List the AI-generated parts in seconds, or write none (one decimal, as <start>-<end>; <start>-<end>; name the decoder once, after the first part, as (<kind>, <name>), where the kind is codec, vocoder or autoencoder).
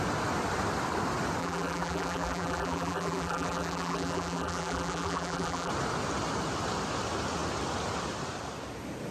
1.4-5.7 (vocoder, BigVGAN v2)